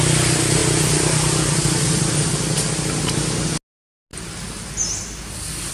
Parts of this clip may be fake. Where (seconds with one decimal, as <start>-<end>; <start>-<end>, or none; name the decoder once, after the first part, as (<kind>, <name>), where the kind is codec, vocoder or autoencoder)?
none